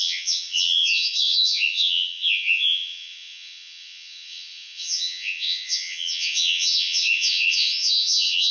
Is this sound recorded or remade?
remade